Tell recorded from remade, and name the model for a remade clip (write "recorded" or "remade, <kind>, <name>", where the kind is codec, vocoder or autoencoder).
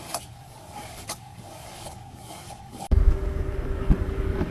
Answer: remade, codec, DAC